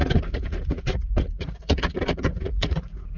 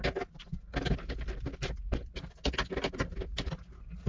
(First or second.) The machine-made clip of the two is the first